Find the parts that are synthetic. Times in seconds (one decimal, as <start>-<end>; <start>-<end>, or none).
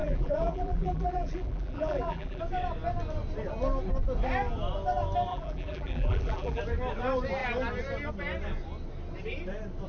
0.0-2.4; 5.3-6.6